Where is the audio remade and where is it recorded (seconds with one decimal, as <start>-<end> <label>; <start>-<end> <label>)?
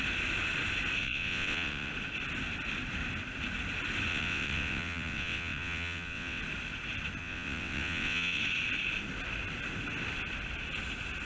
0.0-1.0 recorded; 1.0-1.9 remade; 1.9-4.1 recorded; 4.1-6.4 remade; 6.4-7.2 recorded; 7.2-8.4 remade; 8.4-11.3 recorded